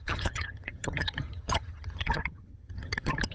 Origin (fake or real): fake